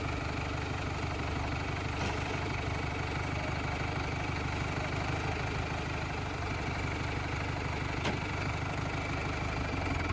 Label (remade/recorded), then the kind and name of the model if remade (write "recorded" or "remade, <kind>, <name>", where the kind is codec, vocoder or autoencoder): recorded